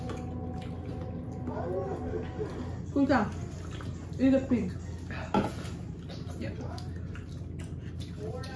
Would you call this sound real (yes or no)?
yes